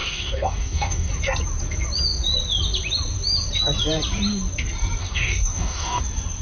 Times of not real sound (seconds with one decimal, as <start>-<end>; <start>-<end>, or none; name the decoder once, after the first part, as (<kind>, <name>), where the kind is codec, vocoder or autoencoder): 0.0-1.1 (codec, DAC); 5.0-6.0